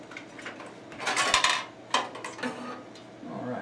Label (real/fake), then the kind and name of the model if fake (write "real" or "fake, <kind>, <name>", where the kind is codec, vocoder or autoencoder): real